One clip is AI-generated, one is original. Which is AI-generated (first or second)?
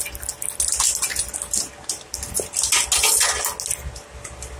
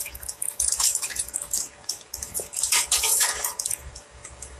second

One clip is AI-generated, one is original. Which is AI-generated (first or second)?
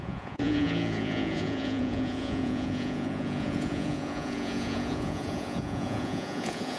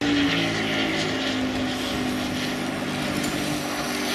first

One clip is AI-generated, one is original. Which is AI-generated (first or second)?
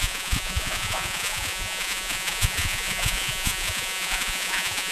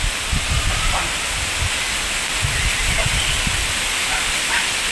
first